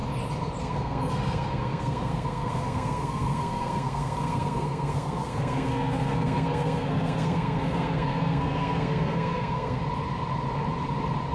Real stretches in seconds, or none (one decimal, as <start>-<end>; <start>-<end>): 0.0-0.6; 9.8-11.3